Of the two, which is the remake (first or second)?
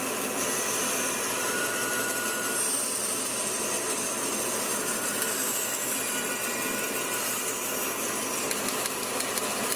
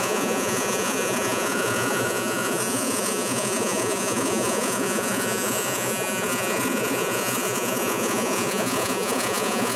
second